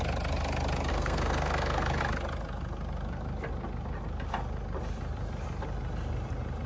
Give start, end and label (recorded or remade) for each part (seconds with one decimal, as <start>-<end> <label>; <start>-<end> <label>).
0.0-0.9 recorded; 0.9-2.0 remade; 2.0-6.7 recorded